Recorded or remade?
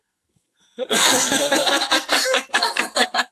remade